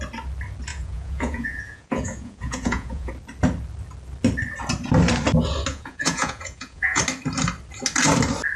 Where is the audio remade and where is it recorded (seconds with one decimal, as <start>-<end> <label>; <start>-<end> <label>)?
0.0-0.7 recorded; 0.7-3.1 remade; 3.1-5.7 recorded; 5.7-7.0 remade; 7.0-8.6 recorded